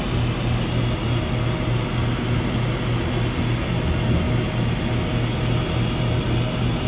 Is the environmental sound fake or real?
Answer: real